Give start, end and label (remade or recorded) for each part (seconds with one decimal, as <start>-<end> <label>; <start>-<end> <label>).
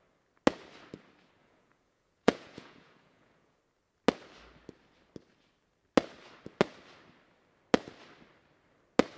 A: 0.0-1.4 recorded; 1.4-3.6 remade; 3.6-9.2 recorded